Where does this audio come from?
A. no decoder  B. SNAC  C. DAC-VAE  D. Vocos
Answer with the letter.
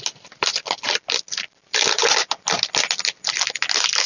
A